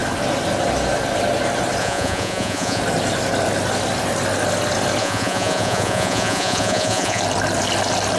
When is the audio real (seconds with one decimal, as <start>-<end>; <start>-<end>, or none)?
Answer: 0.0-1.8; 2.8-5.0; 7.2-8.2